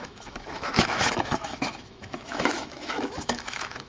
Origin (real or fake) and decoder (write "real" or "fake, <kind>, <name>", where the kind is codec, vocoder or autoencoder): fake, autoencoder, DAC-VAE